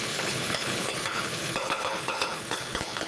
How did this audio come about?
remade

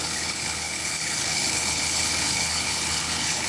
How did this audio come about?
remade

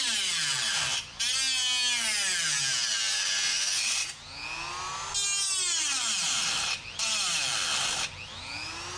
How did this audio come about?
recorded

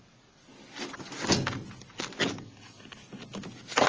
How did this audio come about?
recorded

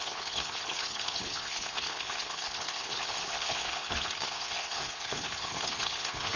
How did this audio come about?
remade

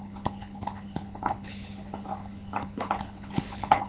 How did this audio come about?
remade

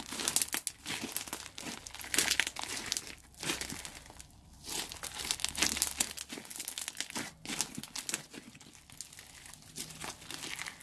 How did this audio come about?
recorded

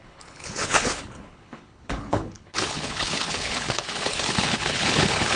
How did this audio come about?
remade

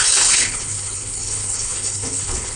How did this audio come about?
remade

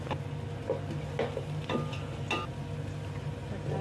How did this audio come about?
recorded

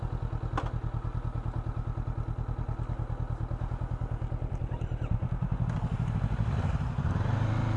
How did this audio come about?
recorded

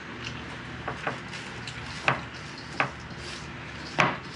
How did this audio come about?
recorded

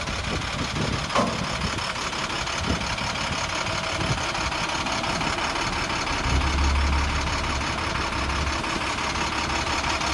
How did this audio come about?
recorded